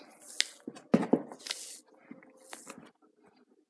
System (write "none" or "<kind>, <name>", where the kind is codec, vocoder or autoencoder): none